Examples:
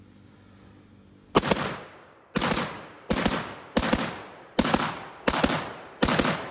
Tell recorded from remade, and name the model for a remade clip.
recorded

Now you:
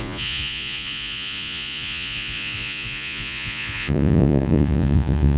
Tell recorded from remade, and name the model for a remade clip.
remade, vocoder, Vocos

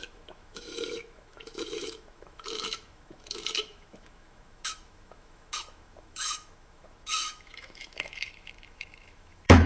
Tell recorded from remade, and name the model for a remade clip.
remade, autoencoder, DAC-VAE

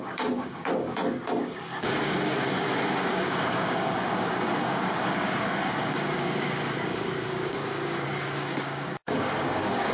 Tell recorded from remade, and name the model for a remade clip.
remade, codec, DAC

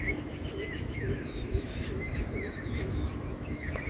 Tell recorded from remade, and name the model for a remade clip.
remade, autoencoder, DAC-VAE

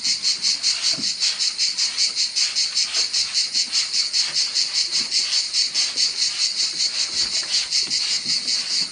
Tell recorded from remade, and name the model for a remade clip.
recorded